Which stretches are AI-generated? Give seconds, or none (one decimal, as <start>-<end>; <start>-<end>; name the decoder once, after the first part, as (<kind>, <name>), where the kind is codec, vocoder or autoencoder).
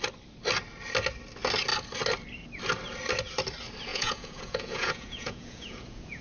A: 3.9-6.2 (vocoder, Vocos)